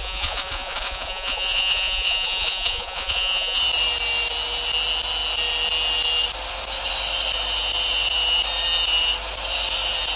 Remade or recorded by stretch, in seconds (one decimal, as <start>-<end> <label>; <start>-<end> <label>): 0.0-3.6 remade; 3.6-10.2 recorded